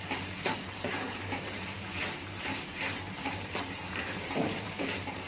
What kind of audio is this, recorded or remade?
remade